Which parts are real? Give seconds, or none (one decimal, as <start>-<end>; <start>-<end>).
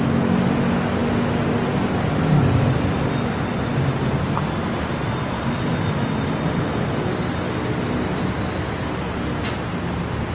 0.0-10.3